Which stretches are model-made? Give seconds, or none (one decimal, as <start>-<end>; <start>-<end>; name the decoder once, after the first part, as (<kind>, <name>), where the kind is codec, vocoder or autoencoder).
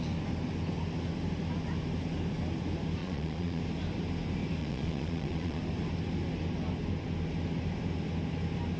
3.0-3.6 (vocoder, Vocos); 4.6-5.6